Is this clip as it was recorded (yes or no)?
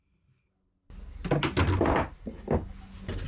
yes